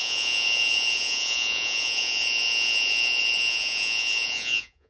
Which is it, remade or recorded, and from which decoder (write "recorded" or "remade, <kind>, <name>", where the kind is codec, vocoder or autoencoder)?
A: remade, vocoder, Vocos